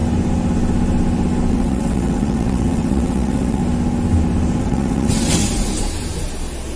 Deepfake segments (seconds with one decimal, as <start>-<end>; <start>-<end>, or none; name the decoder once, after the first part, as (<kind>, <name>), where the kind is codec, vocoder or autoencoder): 1.5-3.6 (vocoder, WaveNeXt); 4.6-5.4